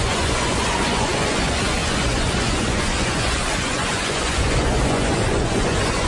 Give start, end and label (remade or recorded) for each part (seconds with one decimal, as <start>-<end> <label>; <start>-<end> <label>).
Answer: 0.0-6.1 remade